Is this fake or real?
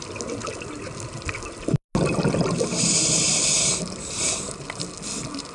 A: real